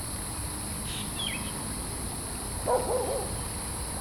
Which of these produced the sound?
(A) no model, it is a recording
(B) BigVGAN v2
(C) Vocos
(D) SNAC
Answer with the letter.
A